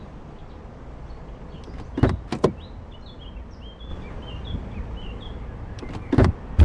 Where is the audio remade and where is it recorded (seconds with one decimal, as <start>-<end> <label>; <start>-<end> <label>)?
0.0-3.9 recorded; 3.9-6.6 remade